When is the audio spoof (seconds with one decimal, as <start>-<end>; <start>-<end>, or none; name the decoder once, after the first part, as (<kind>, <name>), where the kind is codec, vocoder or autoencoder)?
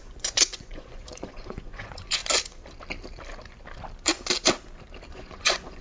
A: 0.0-2.2 (vocoder, Vocos); 5.1-5.8